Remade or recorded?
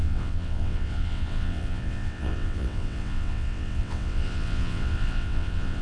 remade